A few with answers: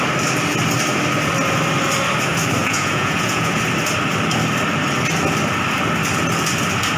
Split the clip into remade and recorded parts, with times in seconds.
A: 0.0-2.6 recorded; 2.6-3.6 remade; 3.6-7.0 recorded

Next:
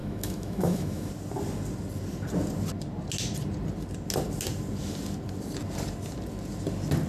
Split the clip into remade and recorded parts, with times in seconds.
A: 0.0-1.1 remade; 1.1-7.1 recorded

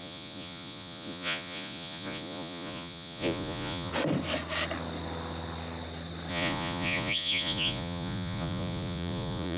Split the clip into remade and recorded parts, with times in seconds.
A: 0.0-3.9 remade; 3.9-6.3 recorded; 6.3-9.6 remade

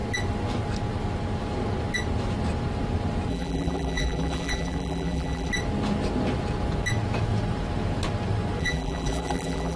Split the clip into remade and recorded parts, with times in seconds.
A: 0.0-3.3 recorded; 3.3-5.5 remade; 5.5-8.6 recorded; 8.6-9.8 remade

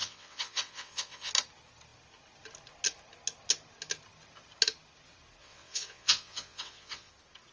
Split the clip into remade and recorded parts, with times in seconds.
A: 0.0-1.3 remade; 1.3-5.4 recorded; 5.4-7.1 remade; 7.1-7.5 recorded

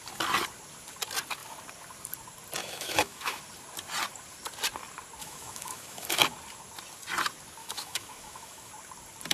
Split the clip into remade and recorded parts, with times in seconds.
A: 0.0-2.6 recorded; 2.6-3.4 remade; 3.4-5.2 recorded; 5.2-6.2 remade; 6.2-7.6 recorded; 7.6-8.7 remade; 8.7-9.3 recorded